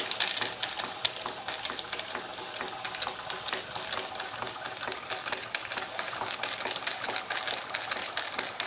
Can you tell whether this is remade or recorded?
recorded